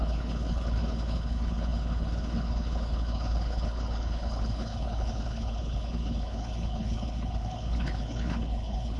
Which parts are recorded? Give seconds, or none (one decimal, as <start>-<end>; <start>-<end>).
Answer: none